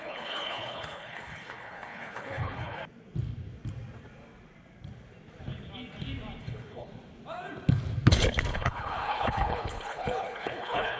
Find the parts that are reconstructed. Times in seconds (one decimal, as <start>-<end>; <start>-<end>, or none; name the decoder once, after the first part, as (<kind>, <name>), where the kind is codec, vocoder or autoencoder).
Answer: 0.0-2.8 (codec, HILCodec); 6.4-6.9; 8.5-11.0